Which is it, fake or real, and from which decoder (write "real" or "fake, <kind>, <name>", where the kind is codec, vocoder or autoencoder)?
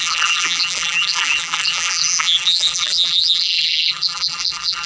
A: fake, vocoder, BigVGAN v2